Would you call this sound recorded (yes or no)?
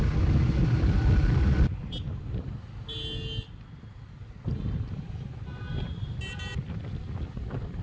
yes